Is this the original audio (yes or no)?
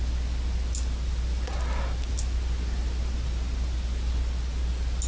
yes